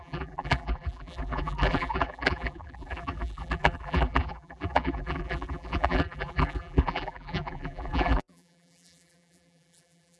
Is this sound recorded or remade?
remade